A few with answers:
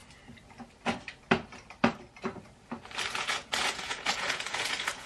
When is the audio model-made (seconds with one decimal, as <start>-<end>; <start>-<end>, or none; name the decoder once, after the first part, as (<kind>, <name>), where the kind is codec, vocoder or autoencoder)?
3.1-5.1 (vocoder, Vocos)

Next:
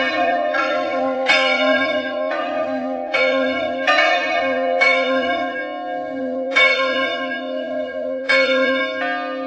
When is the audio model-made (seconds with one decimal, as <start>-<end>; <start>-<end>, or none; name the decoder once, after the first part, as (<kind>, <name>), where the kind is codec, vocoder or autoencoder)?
0.0-5.6 (vocoder, Vocos); 6.2-8.8

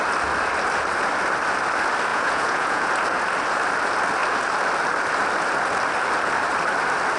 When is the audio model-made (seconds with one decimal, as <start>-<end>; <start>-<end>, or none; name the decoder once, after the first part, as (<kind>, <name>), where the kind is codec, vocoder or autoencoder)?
2.1-2.9 (vocoder, Vocos)

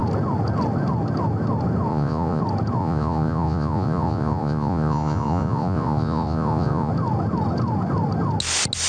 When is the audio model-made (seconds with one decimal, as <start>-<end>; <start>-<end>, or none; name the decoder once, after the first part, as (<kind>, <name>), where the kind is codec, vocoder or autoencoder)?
1.9-2.4 (vocoder, Vocos); 2.8-6.9